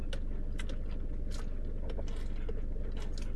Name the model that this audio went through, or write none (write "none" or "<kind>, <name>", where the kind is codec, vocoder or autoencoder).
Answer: none